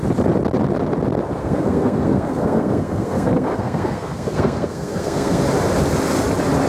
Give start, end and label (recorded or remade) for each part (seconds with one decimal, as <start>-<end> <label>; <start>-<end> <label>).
0.0-1.4 recorded; 1.4-5.4 remade; 5.4-6.7 recorded